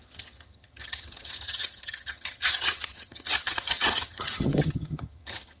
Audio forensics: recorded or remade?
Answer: remade